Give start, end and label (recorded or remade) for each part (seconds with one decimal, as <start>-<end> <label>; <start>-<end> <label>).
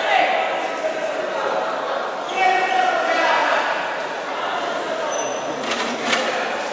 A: 0.0-3.4 recorded; 3.4-4.6 remade; 4.6-5.3 recorded; 5.3-6.2 remade; 6.2-6.7 recorded